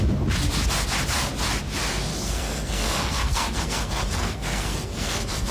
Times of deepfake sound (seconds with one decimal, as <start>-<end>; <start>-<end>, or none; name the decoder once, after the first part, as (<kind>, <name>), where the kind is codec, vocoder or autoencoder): 2.1-5.5 (codec, SNAC)